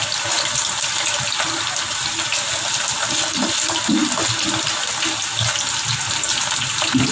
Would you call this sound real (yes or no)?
yes